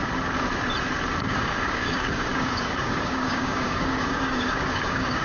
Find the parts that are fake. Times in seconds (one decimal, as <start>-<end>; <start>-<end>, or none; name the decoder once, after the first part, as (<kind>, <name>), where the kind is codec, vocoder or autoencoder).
1.3-5.2 (codec, DAC)